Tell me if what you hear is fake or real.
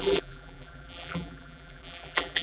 fake